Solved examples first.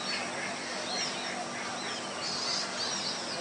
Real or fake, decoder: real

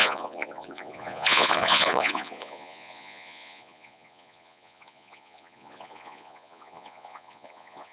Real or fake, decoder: fake, vocoder, Vocos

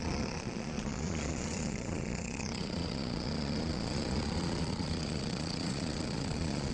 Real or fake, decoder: fake, vocoder, Vocos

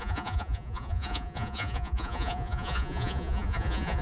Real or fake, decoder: fake, vocoder, Vocos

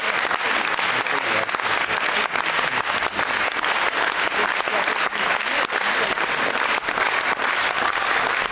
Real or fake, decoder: real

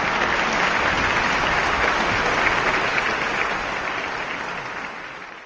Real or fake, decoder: real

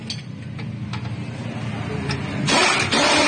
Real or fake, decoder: real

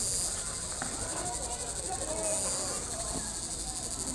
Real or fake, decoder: real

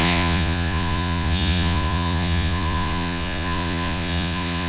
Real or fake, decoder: fake, vocoder, Vocos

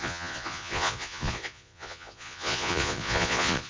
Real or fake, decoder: fake, vocoder, Vocos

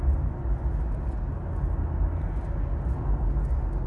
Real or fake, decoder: real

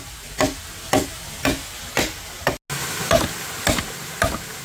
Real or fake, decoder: real